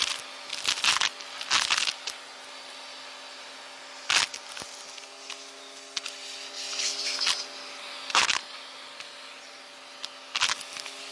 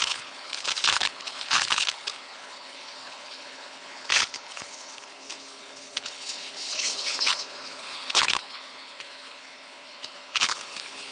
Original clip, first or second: first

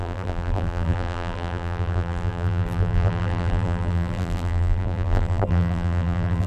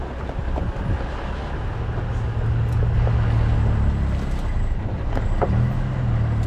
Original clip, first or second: second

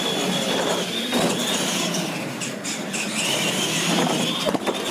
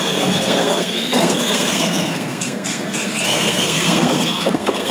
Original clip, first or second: first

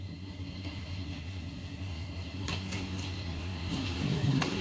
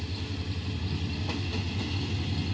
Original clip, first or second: second